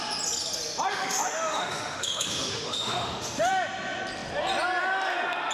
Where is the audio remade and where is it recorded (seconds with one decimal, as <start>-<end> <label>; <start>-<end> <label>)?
0.0-0.9 recorded; 0.9-3.5 remade; 3.5-5.5 recorded